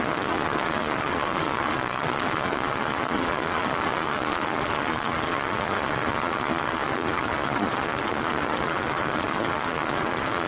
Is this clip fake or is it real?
fake